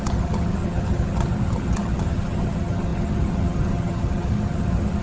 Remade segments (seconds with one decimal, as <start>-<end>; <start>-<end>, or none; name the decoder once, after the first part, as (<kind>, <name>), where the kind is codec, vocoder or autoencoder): 0.0-5.0 (vocoder, HiFi-GAN)